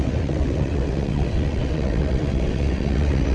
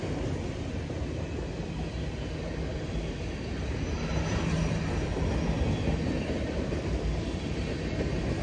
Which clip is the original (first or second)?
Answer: second